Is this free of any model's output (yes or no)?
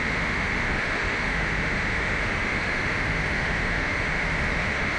no